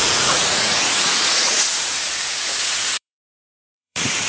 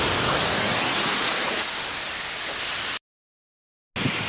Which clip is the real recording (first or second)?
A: second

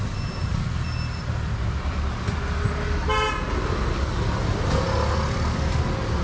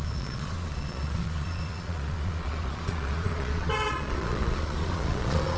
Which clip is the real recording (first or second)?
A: first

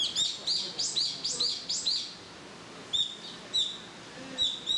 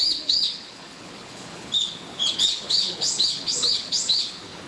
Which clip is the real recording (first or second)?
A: first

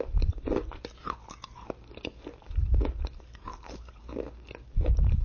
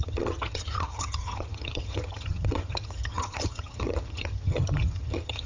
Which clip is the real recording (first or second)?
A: first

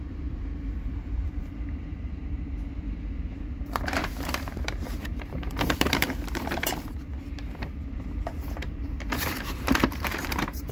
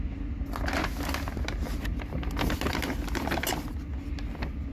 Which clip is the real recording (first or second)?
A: second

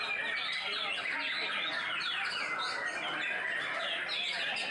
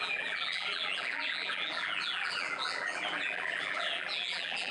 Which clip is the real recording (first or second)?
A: first